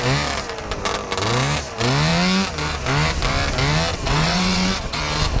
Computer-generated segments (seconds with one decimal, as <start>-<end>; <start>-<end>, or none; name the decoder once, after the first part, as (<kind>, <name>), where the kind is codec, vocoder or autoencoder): 3.9-5.0 (vocoder, WaveNeXt)